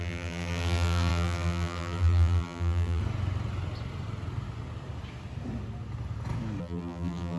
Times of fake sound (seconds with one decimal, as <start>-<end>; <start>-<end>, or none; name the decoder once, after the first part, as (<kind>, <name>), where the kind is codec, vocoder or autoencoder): 0.0-3.0 (vocoder, BigVGAN v2); 6.6-7.4